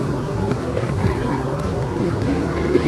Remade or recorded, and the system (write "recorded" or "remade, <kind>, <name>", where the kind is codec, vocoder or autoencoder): remade, codec, SNAC